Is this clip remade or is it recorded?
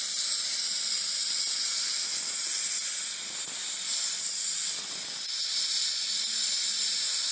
recorded